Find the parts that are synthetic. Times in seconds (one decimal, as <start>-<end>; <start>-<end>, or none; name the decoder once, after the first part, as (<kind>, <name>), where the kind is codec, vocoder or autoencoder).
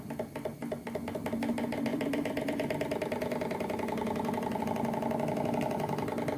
1.9-4.6 (vocoder, BigVGAN v2)